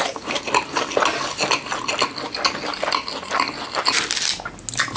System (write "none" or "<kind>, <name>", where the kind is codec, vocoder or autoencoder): none